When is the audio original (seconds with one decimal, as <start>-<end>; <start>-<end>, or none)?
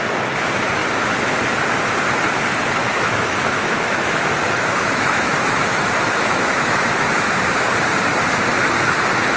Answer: 0.0-2.8; 7.3-9.4